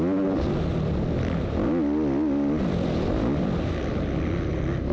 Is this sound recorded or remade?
recorded